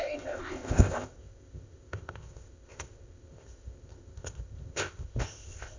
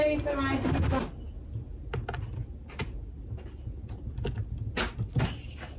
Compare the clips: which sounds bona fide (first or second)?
second